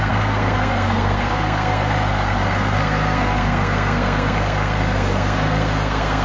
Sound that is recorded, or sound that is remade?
remade